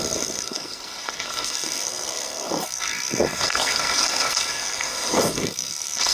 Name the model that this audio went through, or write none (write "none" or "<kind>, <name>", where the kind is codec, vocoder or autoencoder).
codec, SNAC